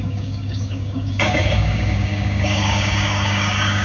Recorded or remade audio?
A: remade